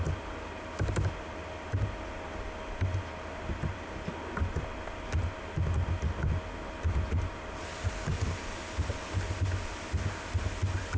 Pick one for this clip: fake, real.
real